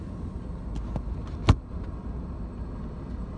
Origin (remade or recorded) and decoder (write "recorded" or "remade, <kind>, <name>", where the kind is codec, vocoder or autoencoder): recorded